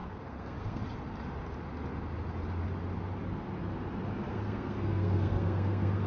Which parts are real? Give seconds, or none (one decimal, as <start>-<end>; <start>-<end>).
0.8-4.3